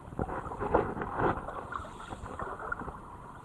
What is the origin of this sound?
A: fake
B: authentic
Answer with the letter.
B